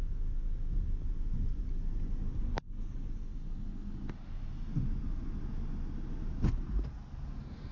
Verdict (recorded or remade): recorded